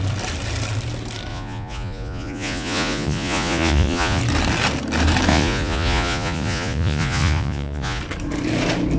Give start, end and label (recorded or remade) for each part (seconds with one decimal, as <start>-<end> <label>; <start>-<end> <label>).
0.0-1.3 recorded; 1.3-4.2 remade; 4.2-5.3 recorded; 5.3-8.0 remade; 8.0-9.0 recorded